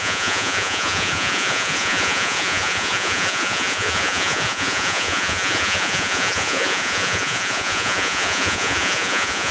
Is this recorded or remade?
remade